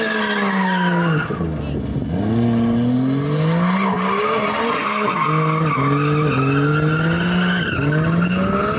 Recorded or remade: recorded